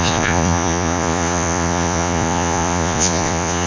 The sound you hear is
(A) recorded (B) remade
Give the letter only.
B